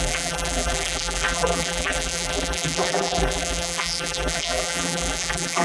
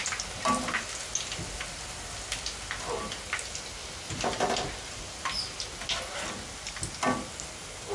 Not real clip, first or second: first